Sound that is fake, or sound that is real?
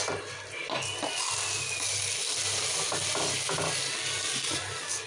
real